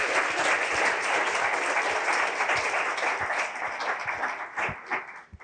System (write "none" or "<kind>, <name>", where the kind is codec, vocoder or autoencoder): none